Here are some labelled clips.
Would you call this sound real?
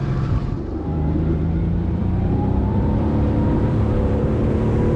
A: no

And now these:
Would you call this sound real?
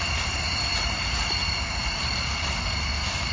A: yes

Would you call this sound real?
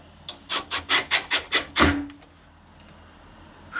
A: yes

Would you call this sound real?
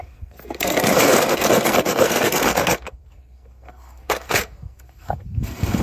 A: no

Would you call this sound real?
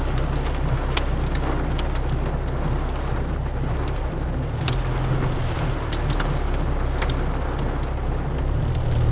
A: yes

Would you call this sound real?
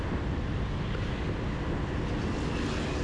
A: yes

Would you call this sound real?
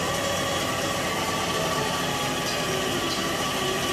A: yes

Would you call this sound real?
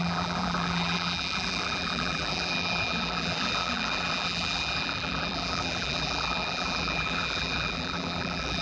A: no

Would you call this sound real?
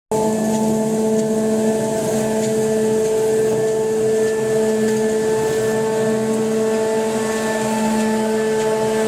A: yes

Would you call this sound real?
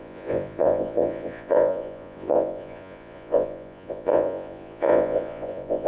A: no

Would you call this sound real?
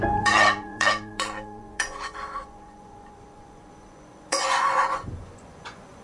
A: no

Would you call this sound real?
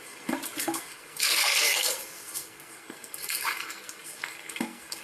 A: no